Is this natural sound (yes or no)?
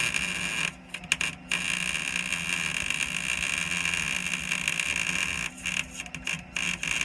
yes